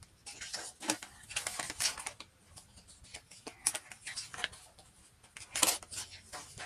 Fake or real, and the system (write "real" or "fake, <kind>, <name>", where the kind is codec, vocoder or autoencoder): real